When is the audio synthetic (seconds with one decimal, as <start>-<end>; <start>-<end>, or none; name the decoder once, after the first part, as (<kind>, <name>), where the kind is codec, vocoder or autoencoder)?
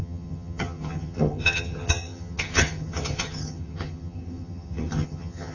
0.0-5.5 (vocoder, HiFi-GAN)